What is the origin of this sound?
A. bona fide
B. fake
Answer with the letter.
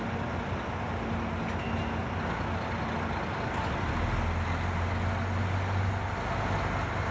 A